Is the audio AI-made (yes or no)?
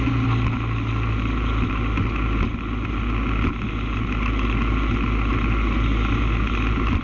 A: no